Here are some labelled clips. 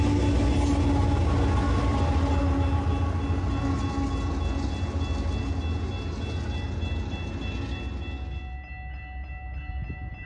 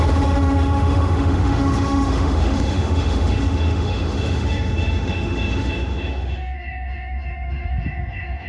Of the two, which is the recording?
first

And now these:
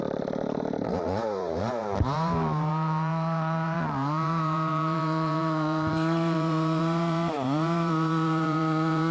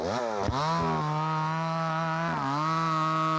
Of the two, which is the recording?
second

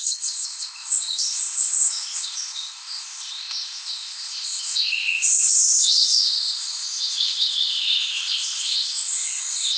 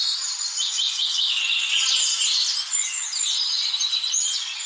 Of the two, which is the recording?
second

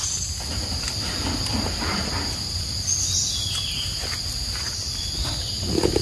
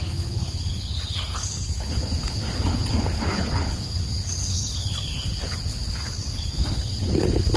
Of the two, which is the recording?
first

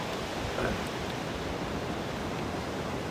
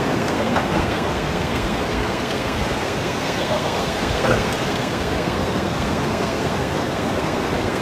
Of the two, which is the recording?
first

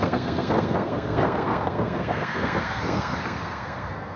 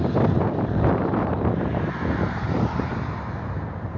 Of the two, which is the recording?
second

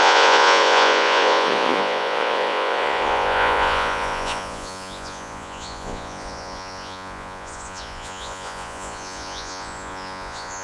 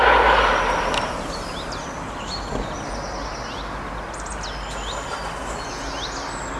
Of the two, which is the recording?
second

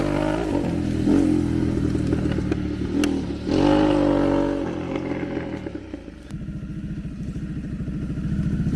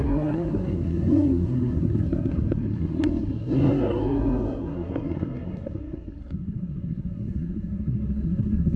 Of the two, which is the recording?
first